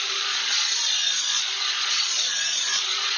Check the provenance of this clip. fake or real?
fake